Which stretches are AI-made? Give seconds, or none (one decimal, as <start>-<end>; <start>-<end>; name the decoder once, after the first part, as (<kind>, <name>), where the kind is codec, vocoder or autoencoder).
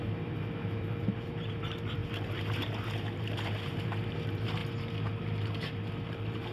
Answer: 0.0-4.6 (vocoder, BigVGAN v2); 5.2-6.5